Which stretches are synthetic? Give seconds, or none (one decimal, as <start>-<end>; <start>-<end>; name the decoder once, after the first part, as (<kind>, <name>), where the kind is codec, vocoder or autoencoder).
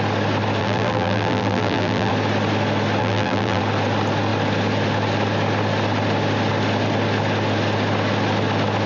0.6-2.1 (vocoder, BigVGAN v2); 3.0-3.6